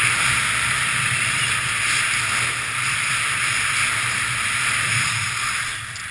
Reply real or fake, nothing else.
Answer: real